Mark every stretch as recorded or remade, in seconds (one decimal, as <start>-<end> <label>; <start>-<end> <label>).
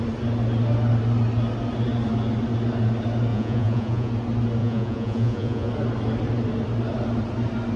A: 0.0-3.3 recorded; 3.3-4.1 remade; 4.1-4.6 recorded; 4.6-5.7 remade; 5.7-7.8 recorded